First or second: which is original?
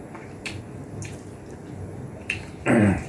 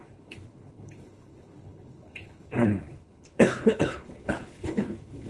first